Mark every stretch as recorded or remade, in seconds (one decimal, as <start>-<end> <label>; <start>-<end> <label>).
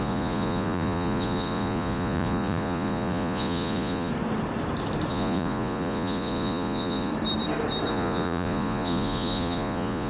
0.0-4.1 remade; 4.1-5.1 recorded; 5.1-7.1 remade; 7.1-7.9 recorded; 7.9-10.1 remade